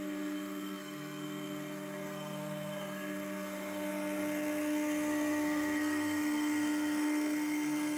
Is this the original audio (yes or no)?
no